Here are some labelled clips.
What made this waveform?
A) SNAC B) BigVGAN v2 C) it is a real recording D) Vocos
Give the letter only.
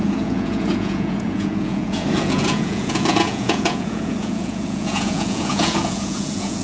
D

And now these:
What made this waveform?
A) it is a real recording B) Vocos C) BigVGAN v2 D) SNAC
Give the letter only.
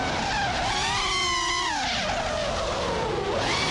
A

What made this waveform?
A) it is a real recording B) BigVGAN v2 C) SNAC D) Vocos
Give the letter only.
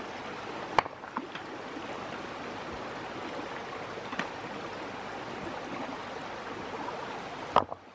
A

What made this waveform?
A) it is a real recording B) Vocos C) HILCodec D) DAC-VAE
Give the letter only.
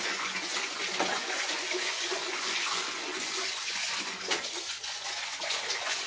B